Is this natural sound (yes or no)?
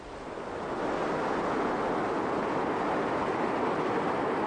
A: yes